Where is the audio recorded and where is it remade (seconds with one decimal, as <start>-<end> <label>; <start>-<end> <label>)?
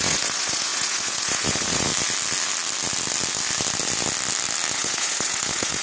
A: 0.0-1.9 remade; 1.9-4.7 recorded; 4.7-5.8 remade